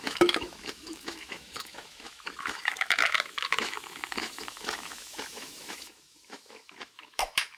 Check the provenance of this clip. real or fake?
fake